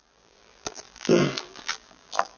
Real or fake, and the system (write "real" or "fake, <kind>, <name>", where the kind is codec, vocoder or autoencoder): fake, vocoder, BigVGAN v2